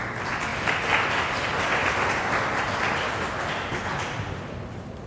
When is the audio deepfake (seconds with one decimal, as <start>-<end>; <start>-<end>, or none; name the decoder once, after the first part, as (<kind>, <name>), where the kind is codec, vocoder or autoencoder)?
none